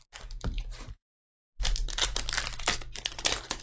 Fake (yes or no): no